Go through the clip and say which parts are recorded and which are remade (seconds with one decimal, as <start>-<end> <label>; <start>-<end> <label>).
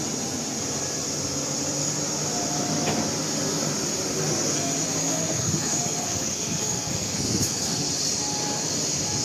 0.0-5.0 recorded; 5.0-7.9 remade; 7.9-9.2 recorded